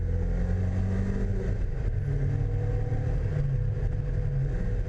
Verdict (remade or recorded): recorded